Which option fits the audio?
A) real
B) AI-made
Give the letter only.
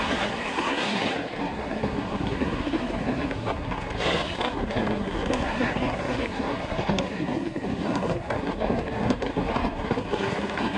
B